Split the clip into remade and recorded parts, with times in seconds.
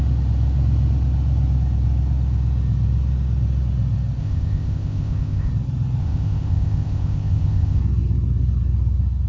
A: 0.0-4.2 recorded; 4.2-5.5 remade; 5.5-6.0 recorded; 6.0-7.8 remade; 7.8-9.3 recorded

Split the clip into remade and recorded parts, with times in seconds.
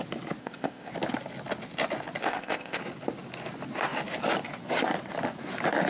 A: 0.0-0.4 recorded; 0.4-0.9 remade; 0.9-2.2 recorded; 2.2-2.8 remade; 2.8-5.9 recorded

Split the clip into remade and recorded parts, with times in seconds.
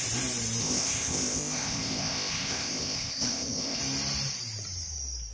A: 0.0-0.6 recorded; 0.6-3.8 remade; 3.8-5.3 recorded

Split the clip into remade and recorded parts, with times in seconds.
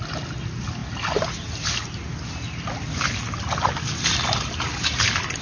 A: 0.0-5.4 recorded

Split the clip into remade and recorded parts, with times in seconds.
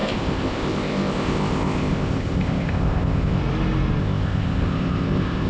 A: 0.0-3.4 remade; 3.4-4.0 recorded; 4.0-5.5 remade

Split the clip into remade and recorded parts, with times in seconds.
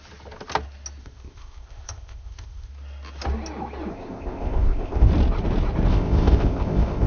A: 0.0-1.0 recorded; 1.0-2.7 remade; 2.7-3.9 recorded; 3.9-5.1 remade; 5.1-5.9 recorded; 5.9-7.1 remade